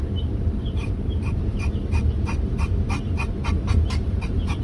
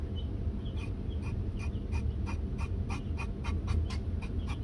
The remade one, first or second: first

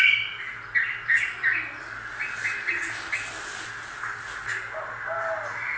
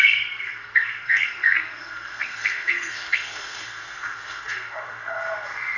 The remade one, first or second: second